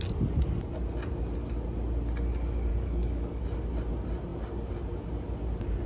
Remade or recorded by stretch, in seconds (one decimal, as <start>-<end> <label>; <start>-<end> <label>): 0.0-2.7 recorded; 2.7-3.4 remade; 3.4-5.9 recorded